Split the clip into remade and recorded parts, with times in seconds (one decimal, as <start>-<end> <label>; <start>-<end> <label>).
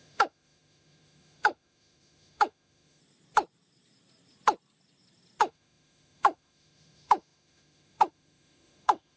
0.0-3.0 remade; 3.0-5.4 recorded; 5.4-9.2 remade